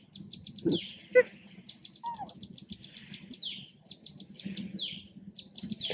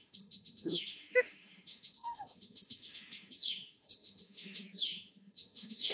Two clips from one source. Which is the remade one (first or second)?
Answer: second